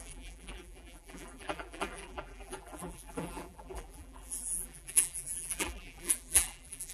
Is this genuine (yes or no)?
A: no